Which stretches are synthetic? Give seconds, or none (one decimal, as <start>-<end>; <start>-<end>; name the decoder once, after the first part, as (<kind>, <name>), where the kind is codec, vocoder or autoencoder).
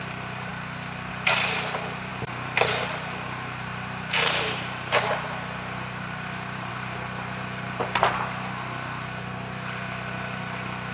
0.0-0.5 (vocoder, BigVGAN v2); 1.1-10.9